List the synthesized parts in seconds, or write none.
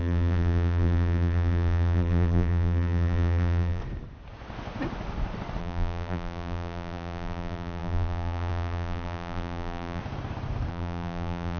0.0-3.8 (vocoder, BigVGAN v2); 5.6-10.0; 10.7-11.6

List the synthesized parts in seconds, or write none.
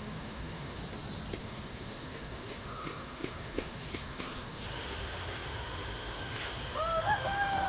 0.0-0.8 (autoencoder, DAC-VAE); 1.4-7.7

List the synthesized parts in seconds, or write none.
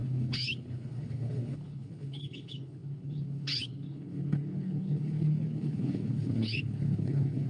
0.0-7.5 (codec, HILCodec)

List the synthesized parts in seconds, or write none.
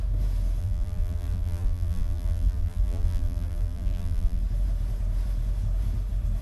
0.6-4.4 (vocoder, BigVGAN v2)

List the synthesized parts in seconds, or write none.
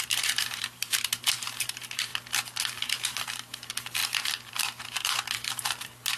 0.0-2.1 (vocoder, BigVGAN v2); 2.8-4.0; 4.5-6.2